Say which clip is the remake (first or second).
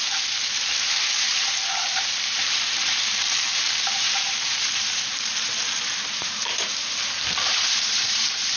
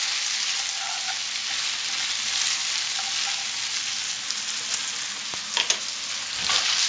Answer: first